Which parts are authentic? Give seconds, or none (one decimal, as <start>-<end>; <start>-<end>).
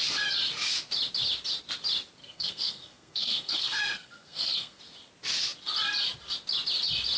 0.0-2.2; 4.8-7.2